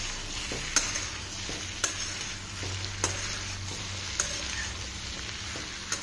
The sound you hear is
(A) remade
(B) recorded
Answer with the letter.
B